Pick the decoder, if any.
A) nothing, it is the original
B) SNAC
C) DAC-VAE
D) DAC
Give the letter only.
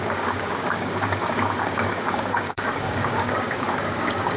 D